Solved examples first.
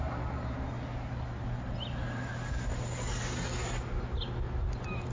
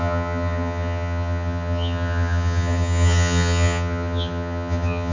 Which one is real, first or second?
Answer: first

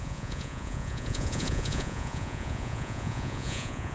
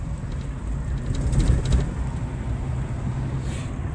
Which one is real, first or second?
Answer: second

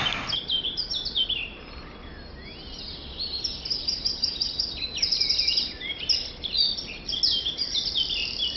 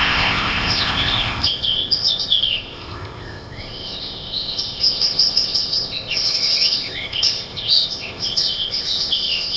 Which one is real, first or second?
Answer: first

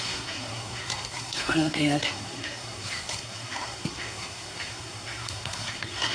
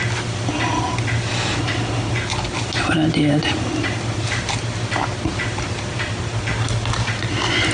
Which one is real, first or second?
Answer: second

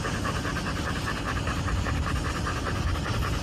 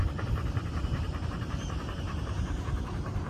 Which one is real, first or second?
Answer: first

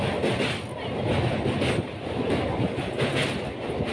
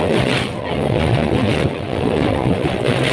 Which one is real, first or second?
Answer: first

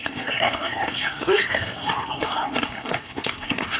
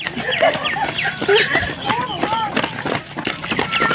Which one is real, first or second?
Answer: second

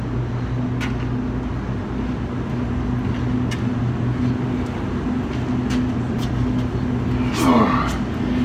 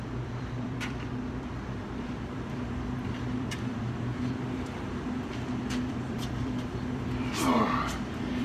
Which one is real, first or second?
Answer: first